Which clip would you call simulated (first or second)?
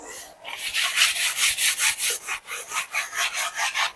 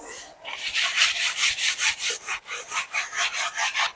second